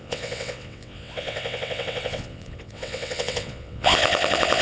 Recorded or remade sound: remade